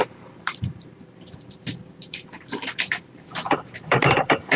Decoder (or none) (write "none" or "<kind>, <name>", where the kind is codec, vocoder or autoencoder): vocoder, BigVGAN v2